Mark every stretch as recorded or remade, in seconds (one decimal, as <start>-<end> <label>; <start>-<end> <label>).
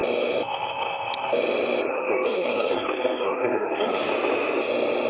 0.0-1.9 recorded; 1.9-4.0 remade; 4.0-5.1 recorded